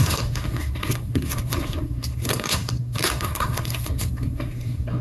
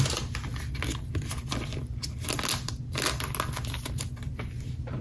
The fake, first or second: first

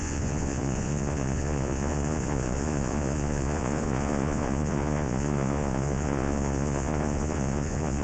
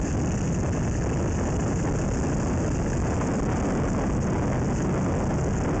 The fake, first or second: first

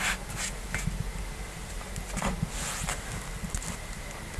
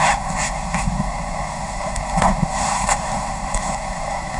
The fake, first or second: second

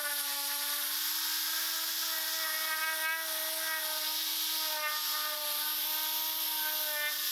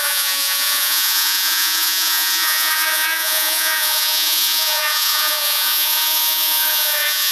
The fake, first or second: second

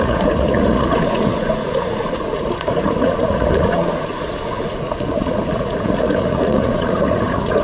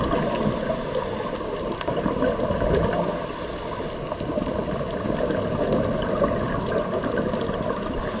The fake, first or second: first